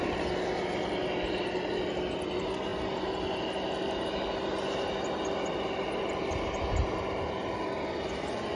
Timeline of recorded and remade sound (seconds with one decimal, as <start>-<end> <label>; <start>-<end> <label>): 0.0-8.5 recorded